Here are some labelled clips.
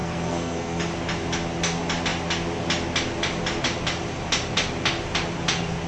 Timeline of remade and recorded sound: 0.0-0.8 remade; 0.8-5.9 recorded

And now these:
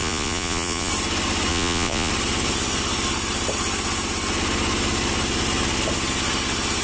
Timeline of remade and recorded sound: 0.0-0.9 remade; 0.9-1.5 recorded; 1.5-2.1 remade; 2.1-6.8 recorded

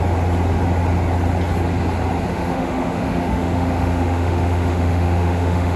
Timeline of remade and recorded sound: 0.0-2.3 recorded; 2.3-5.8 remade

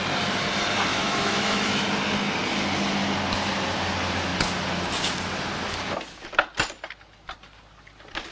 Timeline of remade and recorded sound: 0.0-0.9 recorded; 0.9-1.9 remade; 1.9-8.3 recorded

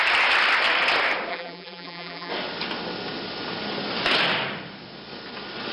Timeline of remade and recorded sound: 0.0-1.3 recorded; 1.3-2.3 remade; 2.3-5.7 recorded

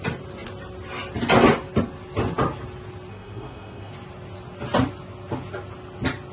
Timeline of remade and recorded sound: 0.0-3.1 recorded; 3.1-3.9 remade; 3.9-6.3 recorded

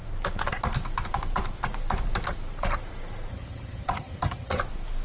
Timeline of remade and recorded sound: 0.0-3.3 recorded; 3.3-4.6 remade; 4.6-5.0 recorded